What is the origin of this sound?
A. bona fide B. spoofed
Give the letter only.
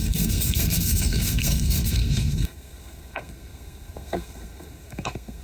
B